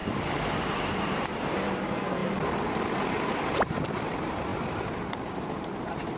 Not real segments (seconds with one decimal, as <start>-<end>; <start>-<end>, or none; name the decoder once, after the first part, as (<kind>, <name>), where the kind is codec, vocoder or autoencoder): 0.8-6.2 (vocoder, BigVGAN v2)